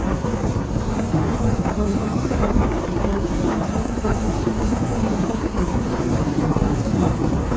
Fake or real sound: fake